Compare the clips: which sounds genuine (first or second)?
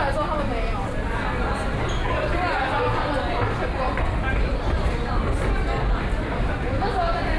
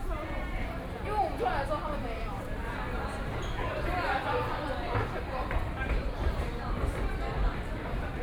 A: first